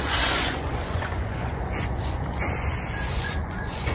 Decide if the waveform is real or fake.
fake